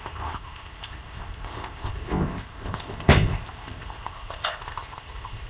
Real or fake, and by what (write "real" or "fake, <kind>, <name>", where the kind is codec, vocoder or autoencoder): fake, codec, ZipCodec